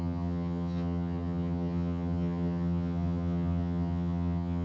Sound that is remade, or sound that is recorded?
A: remade